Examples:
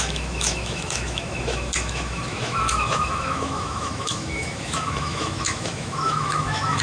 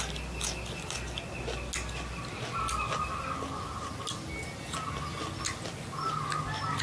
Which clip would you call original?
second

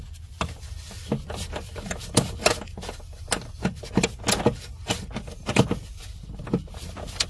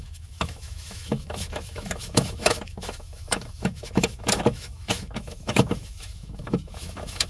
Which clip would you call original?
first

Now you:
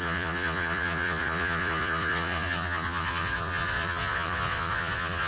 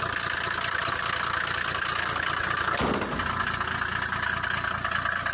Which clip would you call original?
second